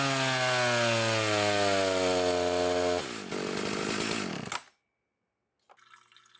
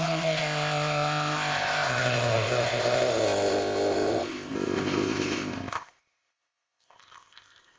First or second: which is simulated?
second